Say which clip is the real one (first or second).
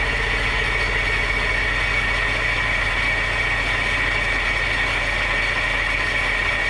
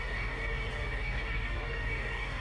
first